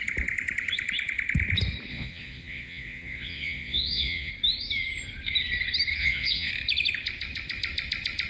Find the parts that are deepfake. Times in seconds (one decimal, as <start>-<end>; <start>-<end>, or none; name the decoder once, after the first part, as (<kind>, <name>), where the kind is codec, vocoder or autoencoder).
1.9-4.3 (vocoder, Vocos); 6.0-6.5